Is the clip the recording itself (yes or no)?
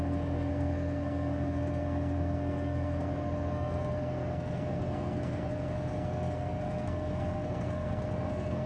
no